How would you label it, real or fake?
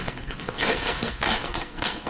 fake